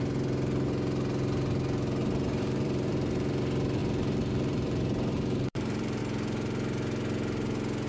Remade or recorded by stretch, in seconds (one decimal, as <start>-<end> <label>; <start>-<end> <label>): 0.0-2.0 recorded; 2.0-3.4 remade; 3.4-3.8 recorded; 3.8-6.0 remade; 6.0-7.9 recorded